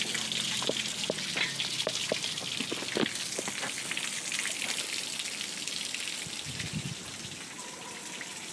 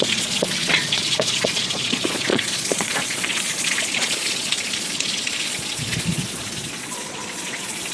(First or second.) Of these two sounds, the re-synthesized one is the second